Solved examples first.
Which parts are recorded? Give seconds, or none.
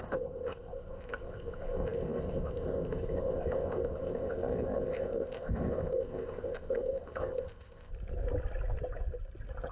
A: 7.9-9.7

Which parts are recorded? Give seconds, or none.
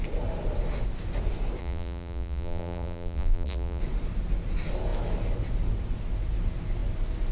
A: 0.0-1.6; 3.8-7.3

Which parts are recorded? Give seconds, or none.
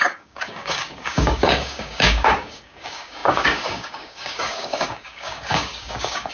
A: none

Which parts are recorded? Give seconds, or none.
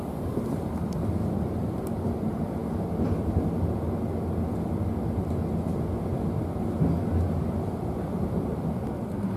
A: 2.6-7.5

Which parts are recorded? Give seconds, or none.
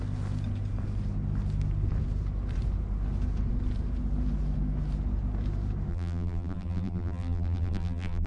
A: 0.0-5.9